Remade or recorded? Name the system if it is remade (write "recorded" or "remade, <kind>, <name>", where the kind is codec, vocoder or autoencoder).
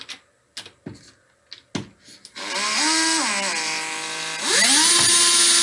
recorded